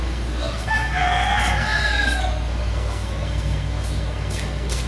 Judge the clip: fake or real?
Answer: fake